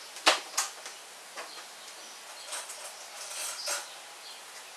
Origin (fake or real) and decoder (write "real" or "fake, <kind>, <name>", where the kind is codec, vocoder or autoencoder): real